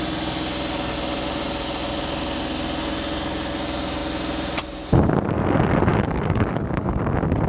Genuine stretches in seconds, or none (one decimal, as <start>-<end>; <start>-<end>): 0.0-5.9; 7.0-7.5